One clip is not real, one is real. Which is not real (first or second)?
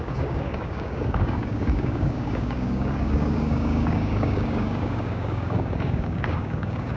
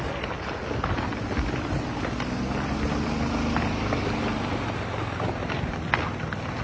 first